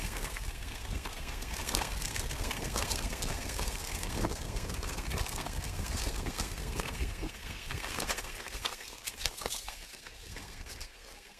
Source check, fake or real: fake